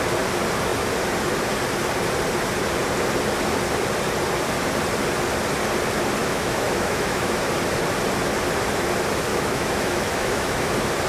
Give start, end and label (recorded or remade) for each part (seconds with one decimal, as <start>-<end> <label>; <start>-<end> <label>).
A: 0.0-6.2 recorded; 6.2-7.5 remade; 7.5-9.3 recorded; 9.3-10.7 remade; 10.7-11.1 recorded